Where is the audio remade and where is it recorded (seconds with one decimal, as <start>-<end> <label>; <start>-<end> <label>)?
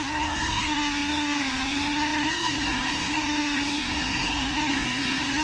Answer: 0.0-5.4 remade